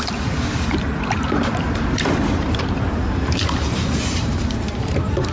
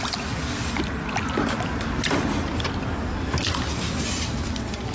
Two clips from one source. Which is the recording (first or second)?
second